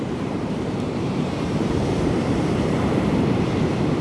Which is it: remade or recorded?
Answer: remade